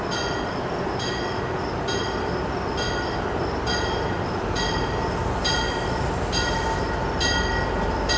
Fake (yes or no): no